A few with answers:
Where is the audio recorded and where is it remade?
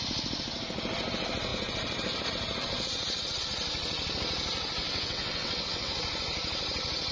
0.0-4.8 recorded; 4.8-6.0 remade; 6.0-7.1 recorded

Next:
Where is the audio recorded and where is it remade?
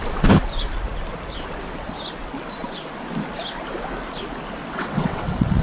0.0-4.6 recorded; 4.6-5.6 remade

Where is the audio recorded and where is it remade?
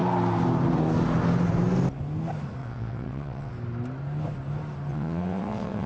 0.0-2.6 recorded; 2.6-3.5 remade; 3.5-4.9 recorded; 4.9-5.9 remade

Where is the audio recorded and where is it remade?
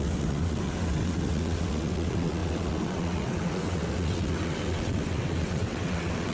0.0-6.3 remade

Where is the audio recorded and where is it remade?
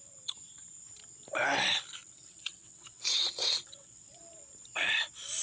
0.0-2.0 recorded; 2.0-4.2 remade; 4.2-5.4 recorded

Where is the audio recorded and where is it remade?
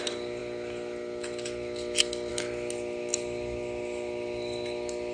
0.0-5.1 recorded